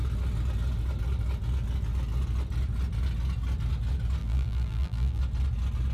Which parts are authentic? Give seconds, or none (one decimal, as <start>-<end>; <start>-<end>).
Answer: 0.0-4.2; 5.2-5.9